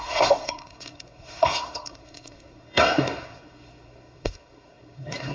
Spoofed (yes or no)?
yes